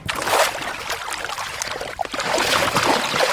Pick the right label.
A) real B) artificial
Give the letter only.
A